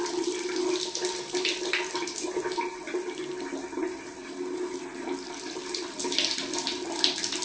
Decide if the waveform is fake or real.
real